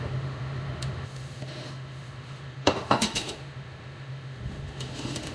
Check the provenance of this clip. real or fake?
fake